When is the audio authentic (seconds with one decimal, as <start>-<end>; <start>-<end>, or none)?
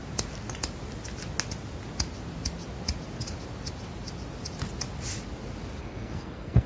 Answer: 0.0-5.8